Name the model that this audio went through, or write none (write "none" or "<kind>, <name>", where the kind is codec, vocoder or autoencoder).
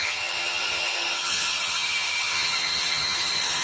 vocoder, HiFi-GAN